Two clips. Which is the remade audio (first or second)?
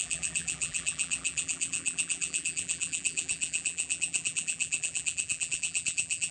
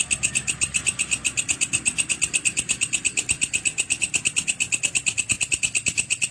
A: first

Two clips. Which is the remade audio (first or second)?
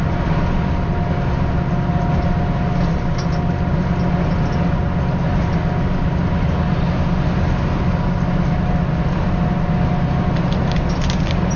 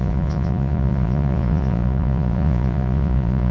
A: second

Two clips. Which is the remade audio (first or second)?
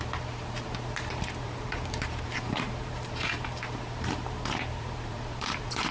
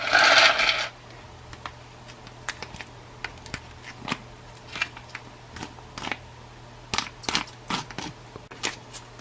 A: first